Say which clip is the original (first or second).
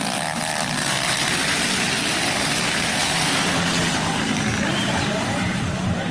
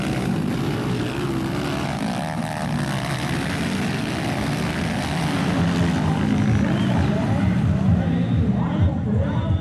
second